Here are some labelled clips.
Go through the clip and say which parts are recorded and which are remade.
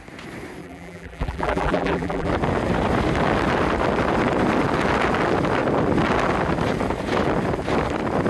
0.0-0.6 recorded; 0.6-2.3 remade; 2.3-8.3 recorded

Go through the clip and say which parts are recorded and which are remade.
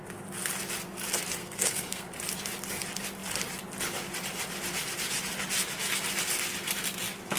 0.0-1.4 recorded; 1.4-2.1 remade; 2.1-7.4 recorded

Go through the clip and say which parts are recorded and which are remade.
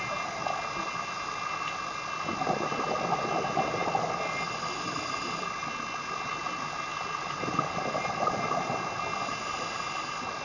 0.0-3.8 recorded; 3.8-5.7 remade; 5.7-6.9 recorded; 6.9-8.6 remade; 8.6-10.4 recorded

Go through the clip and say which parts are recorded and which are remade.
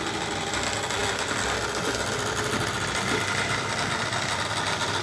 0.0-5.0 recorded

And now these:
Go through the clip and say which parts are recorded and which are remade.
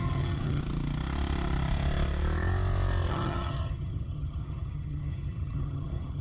0.0-0.6 remade; 0.6-3.1 recorded; 3.1-6.2 remade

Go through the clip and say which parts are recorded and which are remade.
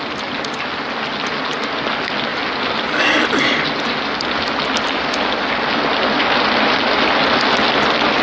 0.0-8.2 recorded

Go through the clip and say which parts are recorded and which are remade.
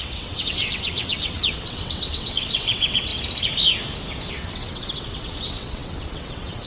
0.0-3.1 remade; 3.1-4.3 recorded; 4.3-6.7 remade